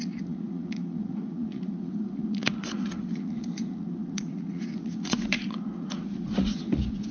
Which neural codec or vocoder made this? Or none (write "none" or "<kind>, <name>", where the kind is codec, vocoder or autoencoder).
vocoder, Vocos